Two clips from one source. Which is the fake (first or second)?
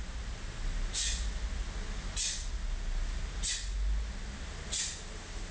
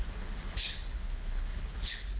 second